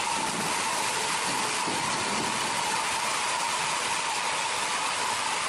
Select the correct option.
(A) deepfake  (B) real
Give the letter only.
B